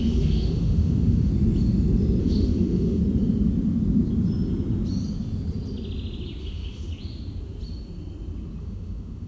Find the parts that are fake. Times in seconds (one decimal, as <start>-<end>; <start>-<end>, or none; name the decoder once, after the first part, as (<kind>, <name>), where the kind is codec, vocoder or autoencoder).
0.0-1.3 (autoencoder, DAC-VAE); 2.2-3.0; 6.4-6.9; 8.6-9.3